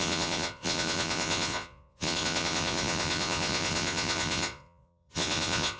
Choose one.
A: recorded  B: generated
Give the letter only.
B